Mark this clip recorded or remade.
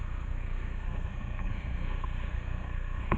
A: remade